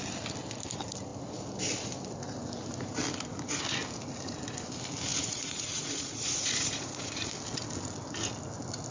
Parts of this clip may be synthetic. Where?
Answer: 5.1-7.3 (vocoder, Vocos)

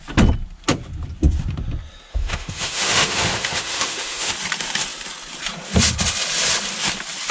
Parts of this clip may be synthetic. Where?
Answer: 2.1-4.3 (autoencoder, DAC-VAE)

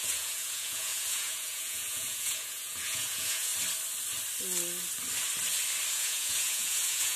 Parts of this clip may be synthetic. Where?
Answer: 0.0-3.5 (vocoder, Vocos); 5.9-7.2